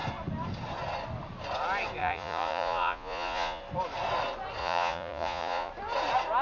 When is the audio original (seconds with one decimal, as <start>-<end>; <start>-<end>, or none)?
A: 0.0-2.0; 3.6-4.6; 5.7-6.4

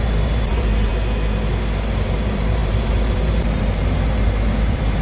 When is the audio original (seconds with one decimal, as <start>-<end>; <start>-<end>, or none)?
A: 0.9-1.9